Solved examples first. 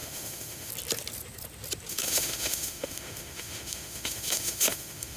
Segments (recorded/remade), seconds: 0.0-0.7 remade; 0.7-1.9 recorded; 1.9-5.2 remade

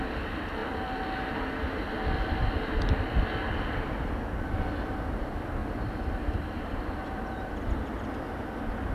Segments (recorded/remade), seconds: 0.0-5.6 recorded; 5.6-7.5 remade; 7.5-8.9 recorded

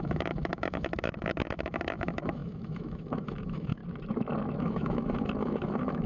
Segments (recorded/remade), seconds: 0.0-3.8 remade; 3.8-4.6 recorded; 4.6-6.1 remade

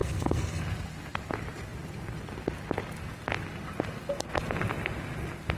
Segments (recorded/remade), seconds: 0.0-0.6 remade; 0.6-5.6 recorded

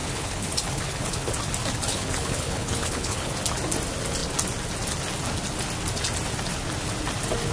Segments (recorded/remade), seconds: 0.0-1.3 remade; 1.3-1.9 recorded; 1.9-3.3 remade; 3.3-7.5 recorded

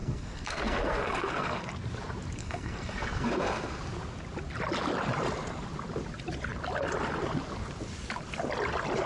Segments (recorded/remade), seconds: 0.0-1.7 remade; 1.7-2.4 recorded; 2.4-3.8 remade; 3.8-9.1 recorded

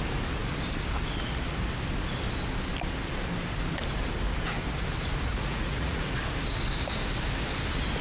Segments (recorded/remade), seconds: 0.0-5.3 recorded; 5.3-6.2 remade; 6.2-8.0 recorded

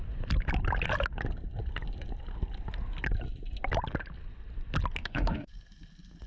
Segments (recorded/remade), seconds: 0.0-5.0 recorded; 5.0-5.5 remade; 5.5-6.3 recorded